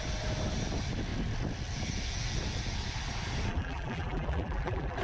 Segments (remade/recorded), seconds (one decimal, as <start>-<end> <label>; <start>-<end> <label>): 0.0-3.5 recorded; 3.5-5.0 remade